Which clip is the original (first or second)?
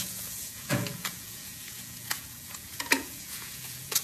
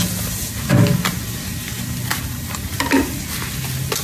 second